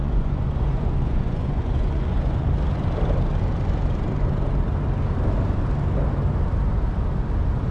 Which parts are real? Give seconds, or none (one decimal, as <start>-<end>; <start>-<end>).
2.5-7.7